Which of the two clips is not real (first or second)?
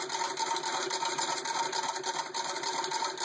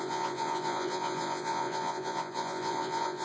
second